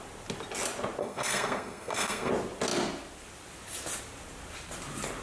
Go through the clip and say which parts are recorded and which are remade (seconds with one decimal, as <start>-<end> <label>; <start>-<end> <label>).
0.0-1.0 recorded; 1.0-2.3 remade; 2.3-5.2 recorded

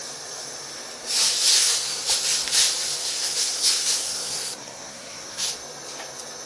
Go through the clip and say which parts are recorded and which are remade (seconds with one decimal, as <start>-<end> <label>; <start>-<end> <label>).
0.0-1.5 recorded; 1.5-2.0 remade; 2.0-3.0 recorded; 3.0-5.5 remade; 5.5-6.5 recorded

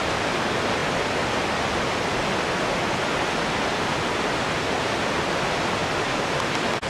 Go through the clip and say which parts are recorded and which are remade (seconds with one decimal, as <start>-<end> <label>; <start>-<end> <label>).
0.0-6.9 recorded

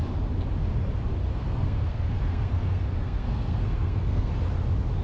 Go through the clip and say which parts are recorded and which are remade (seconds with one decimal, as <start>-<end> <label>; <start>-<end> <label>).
0.0-1.3 recorded; 1.3-4.3 remade; 4.3-5.0 recorded

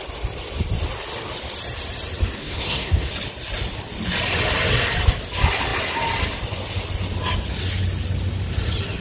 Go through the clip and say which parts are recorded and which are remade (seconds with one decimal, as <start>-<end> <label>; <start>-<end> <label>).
0.0-2.4 recorded; 2.4-3.1 remade; 3.1-9.0 recorded